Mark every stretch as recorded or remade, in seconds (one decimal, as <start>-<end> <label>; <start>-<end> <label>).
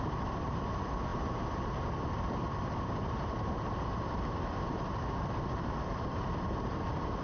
0.0-7.2 remade